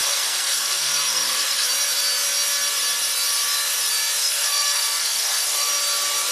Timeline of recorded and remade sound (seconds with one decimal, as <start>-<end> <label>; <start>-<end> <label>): 0.0-1.7 remade; 1.7-4.2 recorded; 4.2-5.7 remade; 5.7-6.3 recorded